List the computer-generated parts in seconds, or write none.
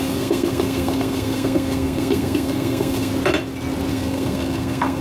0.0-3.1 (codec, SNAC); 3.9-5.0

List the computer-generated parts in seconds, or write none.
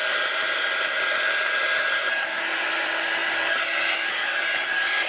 none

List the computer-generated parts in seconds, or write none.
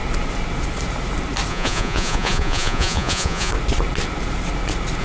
1.5-3.5 (vocoder, Vocos)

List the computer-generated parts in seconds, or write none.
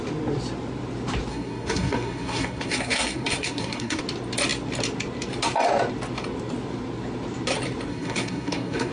1.3-4.0 (codec, SNAC); 7.9-8.9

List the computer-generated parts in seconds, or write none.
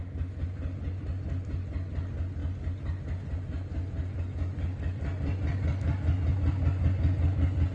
none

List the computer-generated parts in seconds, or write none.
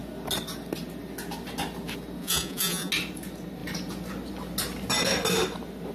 2.2-2.9 (vocoder, Vocos)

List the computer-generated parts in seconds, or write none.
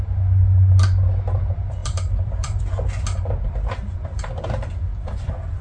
1.8-2.6 (vocoder, BigVGAN v2); 4.9-5.6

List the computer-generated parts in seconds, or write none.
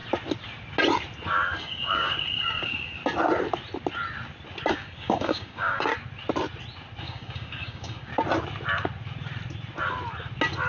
1.6-3.0 (codec, DAC); 4.7-5.9; 7.0-8.1